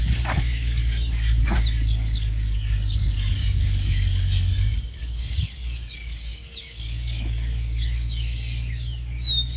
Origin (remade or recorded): remade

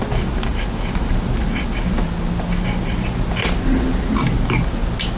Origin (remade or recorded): recorded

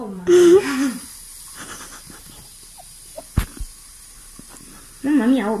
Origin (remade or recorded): recorded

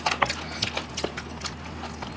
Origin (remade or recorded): recorded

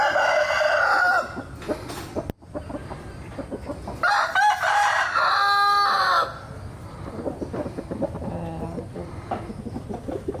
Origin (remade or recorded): recorded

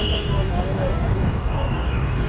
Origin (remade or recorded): remade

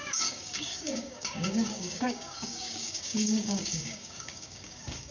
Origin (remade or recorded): remade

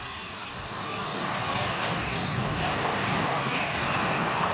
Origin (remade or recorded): remade